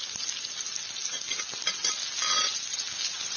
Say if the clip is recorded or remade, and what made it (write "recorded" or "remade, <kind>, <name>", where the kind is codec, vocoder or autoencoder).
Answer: recorded